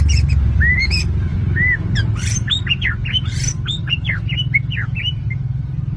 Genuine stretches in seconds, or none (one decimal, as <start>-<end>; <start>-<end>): 0.0-6.0